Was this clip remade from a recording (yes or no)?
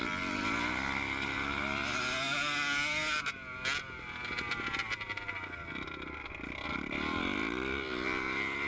no